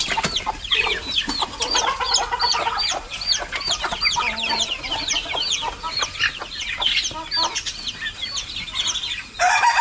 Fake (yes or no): no